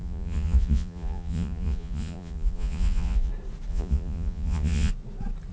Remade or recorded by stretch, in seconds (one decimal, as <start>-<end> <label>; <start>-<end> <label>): 0.0-3.3 remade; 3.3-3.7 recorded; 3.7-4.9 remade; 4.9-5.5 recorded